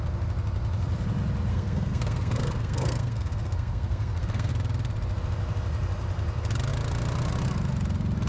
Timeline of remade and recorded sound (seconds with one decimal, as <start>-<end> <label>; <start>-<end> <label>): 0.0-1.5 recorded; 1.5-4.5 remade; 4.5-8.3 recorded